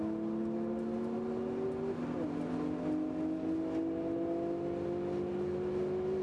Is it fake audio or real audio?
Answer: real